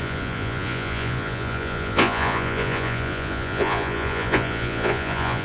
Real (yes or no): no